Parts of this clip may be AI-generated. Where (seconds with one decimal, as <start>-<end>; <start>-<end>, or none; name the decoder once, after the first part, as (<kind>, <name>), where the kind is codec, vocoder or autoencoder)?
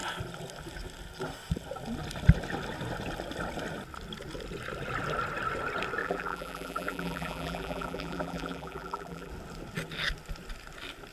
6.0-9.3 (vocoder, BigVGAN v2)